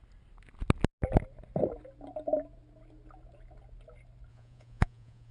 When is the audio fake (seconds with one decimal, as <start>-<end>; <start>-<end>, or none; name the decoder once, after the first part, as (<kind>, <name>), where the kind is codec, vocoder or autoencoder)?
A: 4.3-5.3 (vocoder, Vocos)